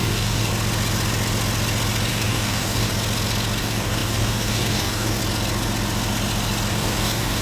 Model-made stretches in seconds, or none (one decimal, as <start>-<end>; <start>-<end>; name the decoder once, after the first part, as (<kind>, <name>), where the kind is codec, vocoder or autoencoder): 0.0-0.5 (codec, DAC); 2.1-2.9; 3.6-5.2; 6.7-7.4